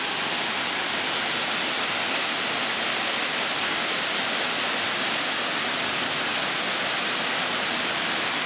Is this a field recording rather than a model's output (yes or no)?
yes